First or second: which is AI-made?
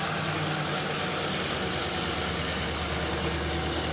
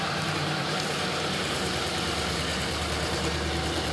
second